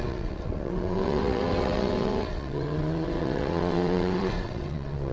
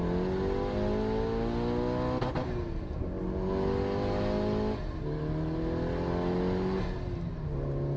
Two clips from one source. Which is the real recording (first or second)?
second